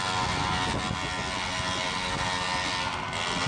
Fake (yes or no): no